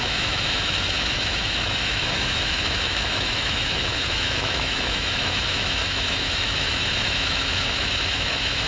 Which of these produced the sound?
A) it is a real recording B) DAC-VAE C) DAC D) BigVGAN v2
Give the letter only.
B